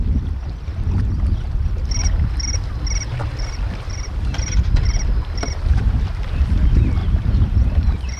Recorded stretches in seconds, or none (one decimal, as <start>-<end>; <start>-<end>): 0.0-7.0